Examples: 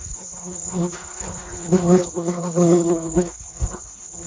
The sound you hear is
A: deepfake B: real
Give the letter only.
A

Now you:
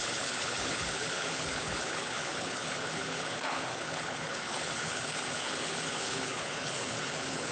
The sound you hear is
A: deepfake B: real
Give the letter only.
A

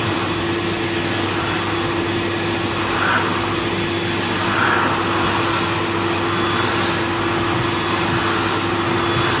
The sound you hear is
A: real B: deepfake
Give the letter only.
A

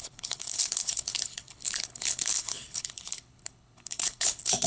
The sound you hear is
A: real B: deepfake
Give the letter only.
B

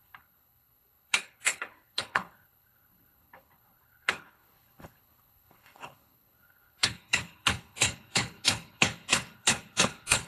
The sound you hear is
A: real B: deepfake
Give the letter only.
B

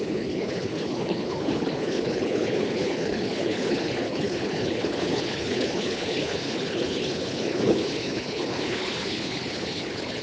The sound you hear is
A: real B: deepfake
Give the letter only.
B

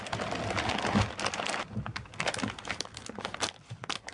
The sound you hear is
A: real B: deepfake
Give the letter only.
A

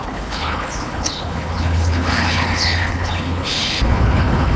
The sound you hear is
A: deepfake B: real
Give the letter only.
A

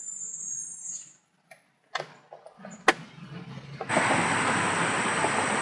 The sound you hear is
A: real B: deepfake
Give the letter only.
A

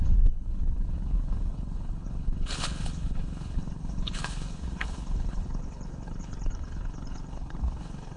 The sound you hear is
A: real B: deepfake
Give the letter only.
B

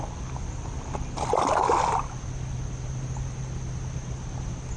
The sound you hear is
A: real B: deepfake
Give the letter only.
A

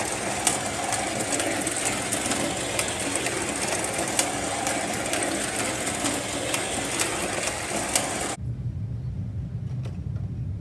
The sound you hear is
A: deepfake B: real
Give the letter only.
B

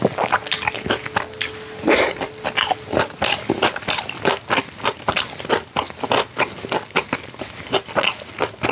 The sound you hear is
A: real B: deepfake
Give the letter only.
A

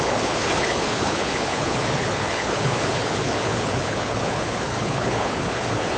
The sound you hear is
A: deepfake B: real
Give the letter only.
A